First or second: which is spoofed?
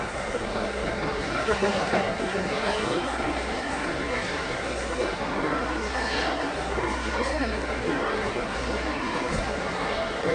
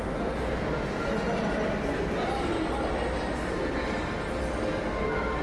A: first